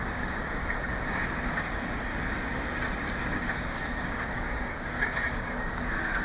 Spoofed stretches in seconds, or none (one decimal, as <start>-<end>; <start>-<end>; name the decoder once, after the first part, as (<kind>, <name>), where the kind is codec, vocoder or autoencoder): 0.0-0.6 (codec, DAC); 1.1-2.1; 3.2-6.2